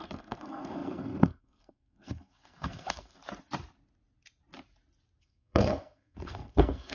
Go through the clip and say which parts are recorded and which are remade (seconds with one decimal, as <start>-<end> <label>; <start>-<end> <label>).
0.0-3.2 remade; 3.2-5.2 recorded; 5.2-6.9 remade